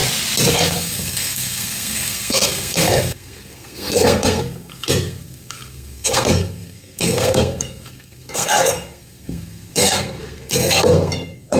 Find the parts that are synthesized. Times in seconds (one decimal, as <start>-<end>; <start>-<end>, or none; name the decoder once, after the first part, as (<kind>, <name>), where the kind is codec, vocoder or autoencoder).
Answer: 0.5-11.6 (codec, SNAC)